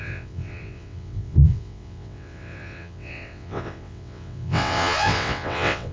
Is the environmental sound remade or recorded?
remade